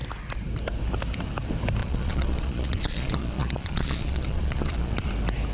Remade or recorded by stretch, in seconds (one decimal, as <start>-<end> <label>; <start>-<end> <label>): 0.0-1.8 recorded; 1.8-5.1 remade; 5.1-5.5 recorded